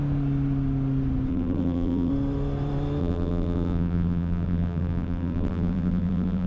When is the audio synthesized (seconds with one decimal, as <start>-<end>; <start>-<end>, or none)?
1.3-2.1; 3.0-6.5